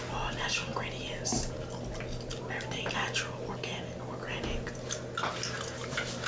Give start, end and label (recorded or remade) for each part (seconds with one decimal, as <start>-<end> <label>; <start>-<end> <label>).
0.0-6.3 recorded